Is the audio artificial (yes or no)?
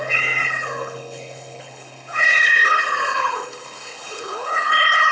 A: yes